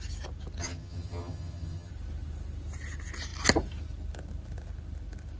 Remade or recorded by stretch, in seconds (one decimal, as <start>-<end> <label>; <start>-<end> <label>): 0.0-0.6 recorded; 0.6-1.9 remade; 1.9-5.4 recorded